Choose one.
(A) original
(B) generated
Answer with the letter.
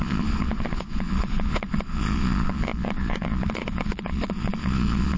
B